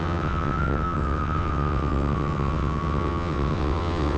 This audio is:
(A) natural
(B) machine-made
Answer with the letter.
B